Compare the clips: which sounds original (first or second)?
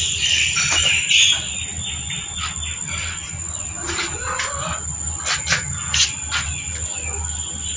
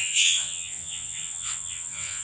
first